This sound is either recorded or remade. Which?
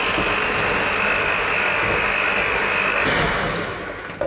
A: recorded